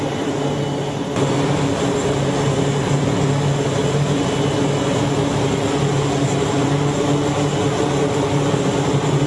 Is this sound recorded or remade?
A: recorded